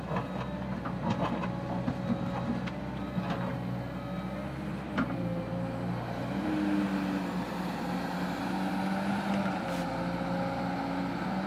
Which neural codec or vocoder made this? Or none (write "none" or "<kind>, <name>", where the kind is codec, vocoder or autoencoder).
none